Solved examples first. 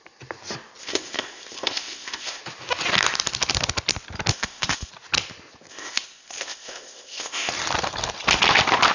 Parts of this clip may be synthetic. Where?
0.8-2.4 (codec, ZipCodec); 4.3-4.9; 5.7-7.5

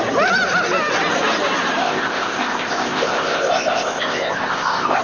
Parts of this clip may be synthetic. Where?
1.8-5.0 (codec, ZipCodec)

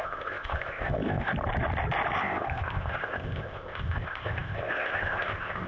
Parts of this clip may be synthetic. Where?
0.0-1.3 (codec, ZipCodec); 2.2-5.7

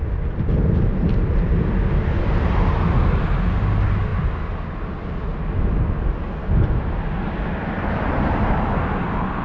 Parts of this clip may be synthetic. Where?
none